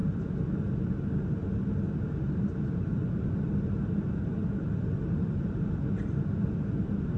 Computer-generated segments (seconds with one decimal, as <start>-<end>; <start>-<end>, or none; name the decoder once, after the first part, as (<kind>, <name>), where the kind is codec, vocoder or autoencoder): none